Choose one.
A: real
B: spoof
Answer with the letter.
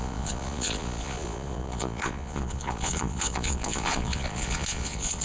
B